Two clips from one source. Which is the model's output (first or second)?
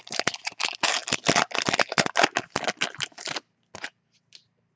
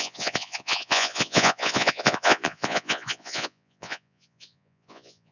second